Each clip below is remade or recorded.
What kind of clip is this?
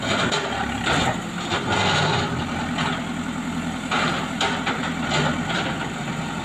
recorded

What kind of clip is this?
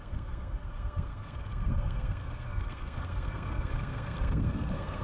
remade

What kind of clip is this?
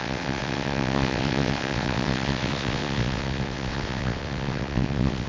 remade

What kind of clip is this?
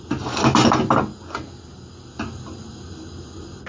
recorded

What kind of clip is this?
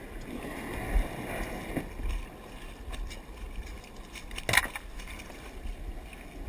recorded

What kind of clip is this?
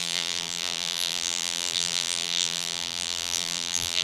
remade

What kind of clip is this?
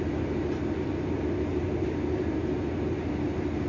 recorded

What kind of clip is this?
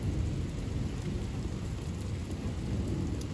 recorded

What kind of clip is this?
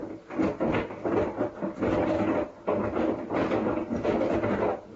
recorded